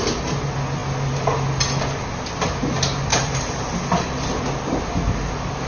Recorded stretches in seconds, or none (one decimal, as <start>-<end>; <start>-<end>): 0.0-3.1; 3.8-5.7